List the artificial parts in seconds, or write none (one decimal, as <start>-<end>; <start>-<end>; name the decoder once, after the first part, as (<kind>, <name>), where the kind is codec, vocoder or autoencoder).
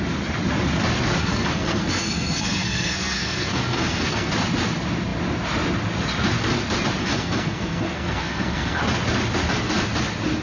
1.2-4.3 (codec, SNAC); 7.0-8.8